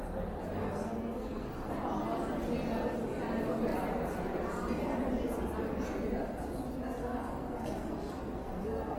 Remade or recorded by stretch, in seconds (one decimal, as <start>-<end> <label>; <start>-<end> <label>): 0.0-0.6 recorded; 0.6-1.7 remade; 1.7-7.0 recorded; 7.0-9.0 remade